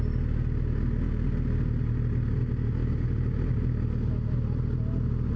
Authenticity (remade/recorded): recorded